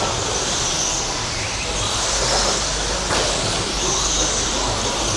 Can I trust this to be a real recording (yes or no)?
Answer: yes